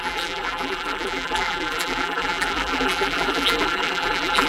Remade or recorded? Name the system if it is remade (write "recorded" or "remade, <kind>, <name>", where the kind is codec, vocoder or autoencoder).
remade, vocoder, BigVGAN v2